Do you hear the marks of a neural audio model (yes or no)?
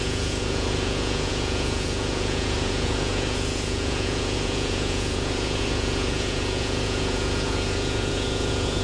yes